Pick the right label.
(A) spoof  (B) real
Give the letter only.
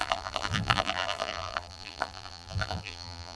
A